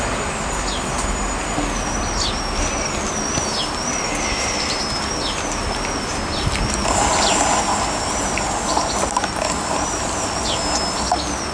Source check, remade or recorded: recorded